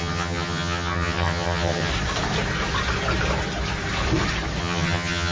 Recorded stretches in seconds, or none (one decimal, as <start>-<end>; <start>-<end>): 1.9-4.6